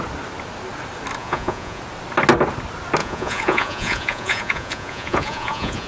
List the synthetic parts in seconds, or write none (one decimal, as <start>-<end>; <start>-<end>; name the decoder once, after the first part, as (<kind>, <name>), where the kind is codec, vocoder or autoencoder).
1.2-1.8 (vocoder, Vocos); 3.0-5.9